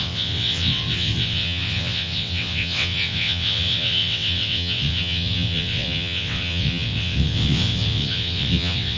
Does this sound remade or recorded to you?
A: remade